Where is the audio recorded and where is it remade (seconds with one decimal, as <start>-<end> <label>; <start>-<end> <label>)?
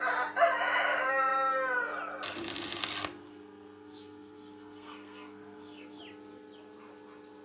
0.0-3.2 recorded; 3.2-6.0 remade; 6.0-7.4 recorded